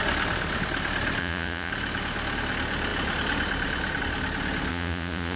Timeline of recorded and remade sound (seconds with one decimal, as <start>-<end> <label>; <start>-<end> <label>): 0.0-1.2 recorded; 1.2-1.7 remade; 1.7-4.7 recorded; 4.7-5.4 remade